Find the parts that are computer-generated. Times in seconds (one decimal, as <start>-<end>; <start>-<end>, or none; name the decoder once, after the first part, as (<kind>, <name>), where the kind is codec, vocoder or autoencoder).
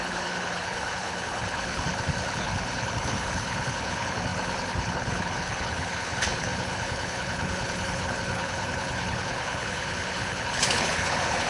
0.0-11.5 (codec, HILCodec)